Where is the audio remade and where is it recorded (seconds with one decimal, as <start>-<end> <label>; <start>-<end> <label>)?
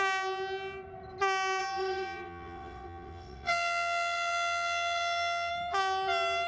0.0-1.6 recorded; 1.6-5.5 remade; 5.5-6.5 recorded